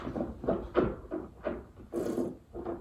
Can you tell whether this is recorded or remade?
recorded